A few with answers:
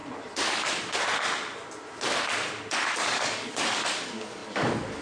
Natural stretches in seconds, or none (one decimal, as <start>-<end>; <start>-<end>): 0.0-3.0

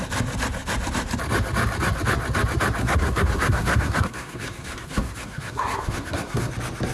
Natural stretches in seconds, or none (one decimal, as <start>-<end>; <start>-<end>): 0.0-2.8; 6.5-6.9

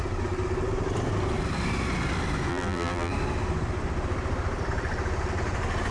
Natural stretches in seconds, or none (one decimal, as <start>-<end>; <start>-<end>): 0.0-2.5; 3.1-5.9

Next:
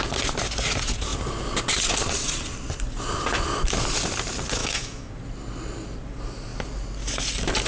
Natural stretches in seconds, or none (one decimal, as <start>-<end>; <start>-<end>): 0.0-4.6; 5.1-7.7